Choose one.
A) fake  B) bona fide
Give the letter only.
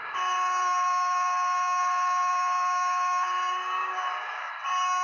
A